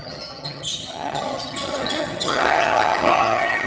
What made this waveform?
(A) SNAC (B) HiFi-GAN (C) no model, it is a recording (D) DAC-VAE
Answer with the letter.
B